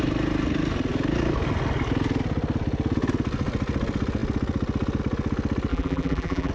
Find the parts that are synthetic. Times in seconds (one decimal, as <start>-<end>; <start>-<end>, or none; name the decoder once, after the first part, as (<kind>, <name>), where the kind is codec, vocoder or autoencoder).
5.7-6.5 (vocoder, BigVGAN v2)